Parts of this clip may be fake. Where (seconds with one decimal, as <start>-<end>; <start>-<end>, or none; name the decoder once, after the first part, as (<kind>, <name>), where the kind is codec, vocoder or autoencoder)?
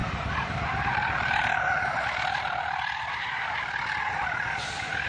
0.0-3.1 (vocoder, BigVGAN v2)